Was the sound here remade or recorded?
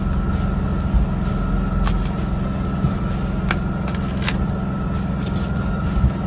recorded